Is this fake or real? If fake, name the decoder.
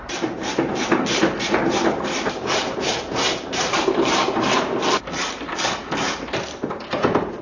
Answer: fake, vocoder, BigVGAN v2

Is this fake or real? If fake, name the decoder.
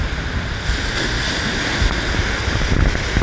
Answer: real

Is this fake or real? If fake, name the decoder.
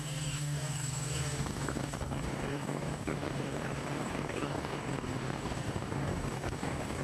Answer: fake, codec, DAC